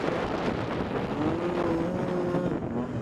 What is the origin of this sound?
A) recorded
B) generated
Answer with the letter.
A